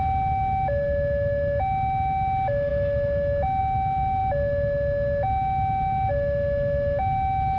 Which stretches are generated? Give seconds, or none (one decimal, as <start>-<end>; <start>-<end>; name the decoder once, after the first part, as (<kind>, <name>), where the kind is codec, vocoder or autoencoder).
none